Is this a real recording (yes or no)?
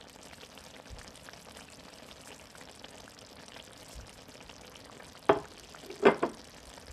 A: yes